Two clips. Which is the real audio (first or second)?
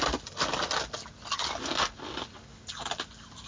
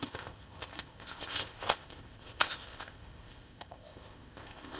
first